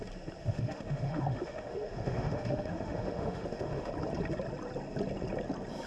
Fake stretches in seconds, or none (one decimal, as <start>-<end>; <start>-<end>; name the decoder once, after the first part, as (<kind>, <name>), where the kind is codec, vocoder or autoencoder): 0.4-3.9 (autoencoder, DAC-VAE)